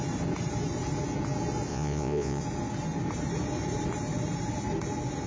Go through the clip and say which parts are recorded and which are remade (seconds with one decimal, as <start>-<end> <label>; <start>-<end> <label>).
0.0-1.7 recorded; 1.7-2.4 remade; 2.4-5.3 recorded